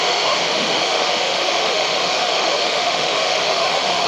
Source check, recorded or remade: remade